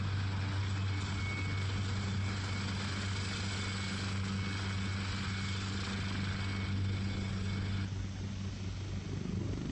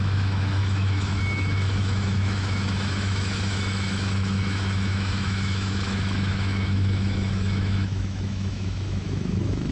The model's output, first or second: second